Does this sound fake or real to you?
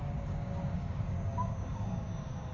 fake